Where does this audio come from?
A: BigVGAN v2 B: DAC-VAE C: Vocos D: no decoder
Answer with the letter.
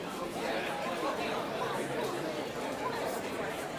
A